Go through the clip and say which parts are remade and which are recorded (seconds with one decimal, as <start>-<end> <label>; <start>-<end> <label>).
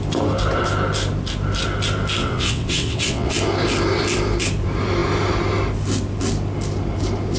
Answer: 0.0-2.2 recorded; 2.2-3.3 remade; 3.3-7.4 recorded